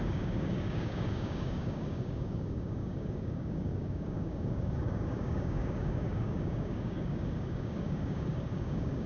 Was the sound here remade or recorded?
remade